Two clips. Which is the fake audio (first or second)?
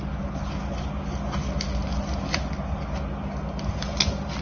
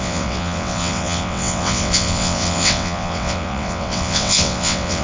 second